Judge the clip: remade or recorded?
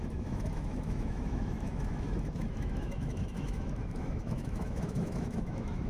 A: remade